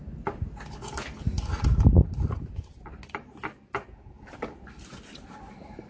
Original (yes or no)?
yes